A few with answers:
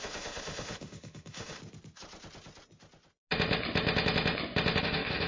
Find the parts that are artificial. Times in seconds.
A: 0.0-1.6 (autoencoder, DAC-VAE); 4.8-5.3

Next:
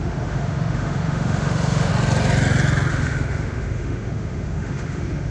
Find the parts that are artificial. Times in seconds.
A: 0.0-1.9 (autoencoder, DAC-VAE); 2.9-5.3

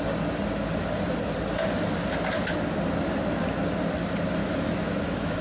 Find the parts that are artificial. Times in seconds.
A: 4.4-5.4 (autoencoder, DAC-VAE)

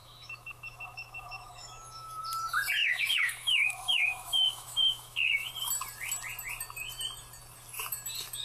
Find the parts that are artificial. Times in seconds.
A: 0.0-2.2 (autoencoder, DAC-VAE); 2.8-5.5